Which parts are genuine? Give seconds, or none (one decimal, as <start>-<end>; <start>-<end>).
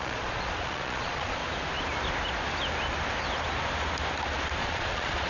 1.4-4.6